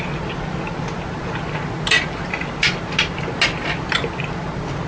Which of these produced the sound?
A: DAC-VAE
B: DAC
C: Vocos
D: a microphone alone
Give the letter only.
D